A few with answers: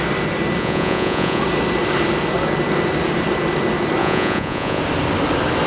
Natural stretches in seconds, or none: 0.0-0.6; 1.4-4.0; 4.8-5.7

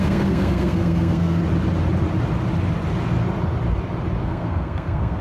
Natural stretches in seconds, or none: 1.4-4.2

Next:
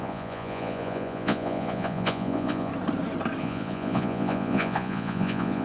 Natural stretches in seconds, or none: 2.7-3.4

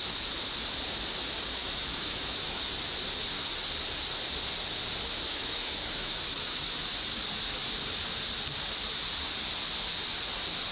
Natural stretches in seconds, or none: 0.0-1.6; 2.7-5.3; 6.8-10.7

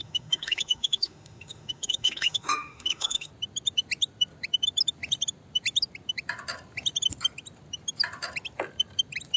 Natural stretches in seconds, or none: 3.3-9.4

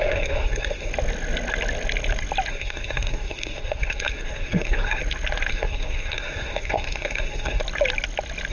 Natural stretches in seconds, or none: 0.9-2.5; 5.0-5.5; 7.6-8.5

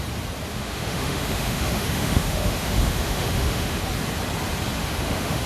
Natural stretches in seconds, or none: 0.0-0.5; 3.8-4.8

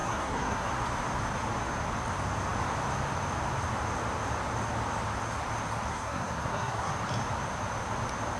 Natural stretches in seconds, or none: 0.7-5.9; 6.9-8.4